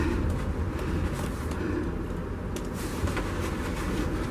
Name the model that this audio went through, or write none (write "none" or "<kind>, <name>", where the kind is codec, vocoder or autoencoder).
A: none